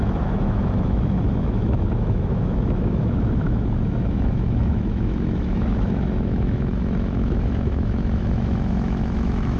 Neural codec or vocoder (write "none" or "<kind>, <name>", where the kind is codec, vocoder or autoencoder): autoencoder, DAC-VAE